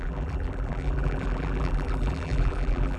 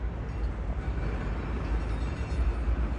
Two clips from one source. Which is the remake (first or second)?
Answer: first